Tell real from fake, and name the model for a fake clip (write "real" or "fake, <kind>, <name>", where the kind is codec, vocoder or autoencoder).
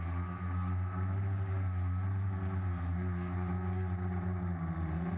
real